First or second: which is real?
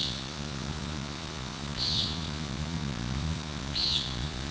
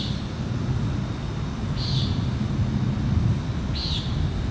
second